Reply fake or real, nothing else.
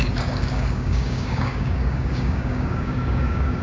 fake